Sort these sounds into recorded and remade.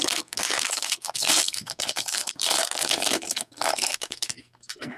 remade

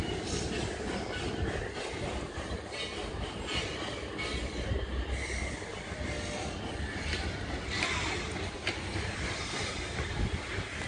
recorded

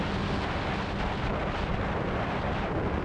recorded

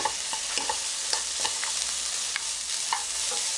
recorded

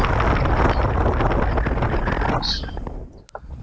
recorded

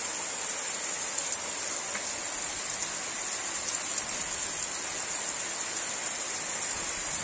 recorded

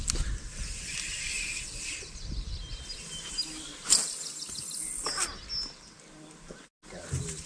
recorded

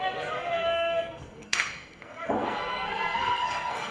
remade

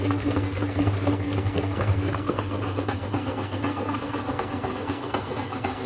remade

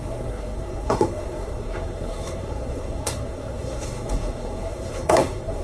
remade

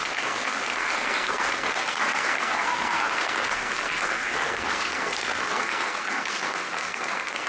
remade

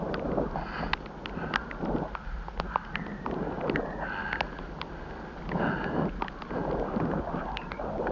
recorded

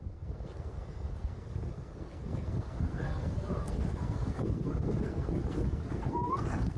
remade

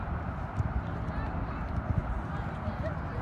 recorded